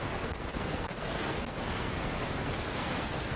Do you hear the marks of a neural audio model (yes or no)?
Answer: yes